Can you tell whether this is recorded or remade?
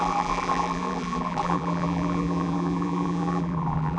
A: remade